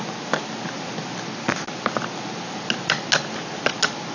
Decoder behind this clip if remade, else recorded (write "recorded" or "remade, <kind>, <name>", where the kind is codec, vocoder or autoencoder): recorded